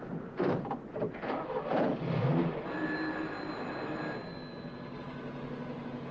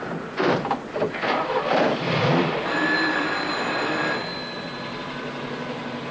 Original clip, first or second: first